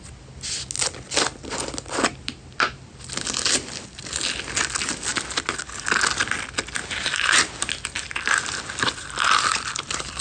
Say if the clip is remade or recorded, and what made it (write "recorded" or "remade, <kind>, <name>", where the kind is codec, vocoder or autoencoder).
recorded